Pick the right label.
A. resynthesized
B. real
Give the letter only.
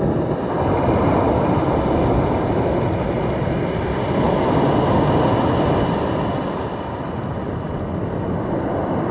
B